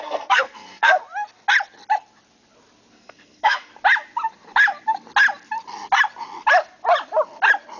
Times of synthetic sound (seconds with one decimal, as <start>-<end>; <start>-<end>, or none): 0.0-1.0; 2.9-3.7